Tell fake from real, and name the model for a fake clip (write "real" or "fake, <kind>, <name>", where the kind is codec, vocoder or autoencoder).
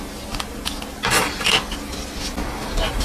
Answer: real